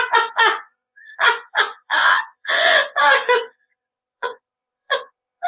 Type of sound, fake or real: fake